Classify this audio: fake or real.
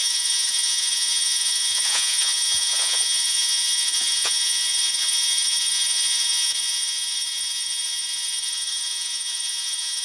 fake